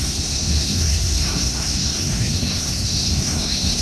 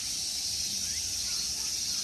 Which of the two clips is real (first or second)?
second